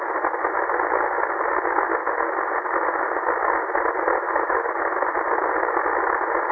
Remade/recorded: recorded